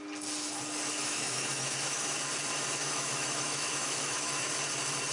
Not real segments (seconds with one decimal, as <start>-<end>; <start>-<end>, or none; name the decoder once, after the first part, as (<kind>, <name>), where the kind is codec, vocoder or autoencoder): 1.0-2.2 (autoencoder, DAC-VAE); 2.8-4.5